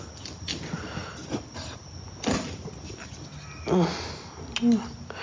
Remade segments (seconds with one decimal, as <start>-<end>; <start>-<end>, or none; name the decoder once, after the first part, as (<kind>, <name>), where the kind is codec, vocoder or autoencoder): none